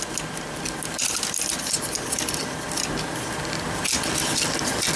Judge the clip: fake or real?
real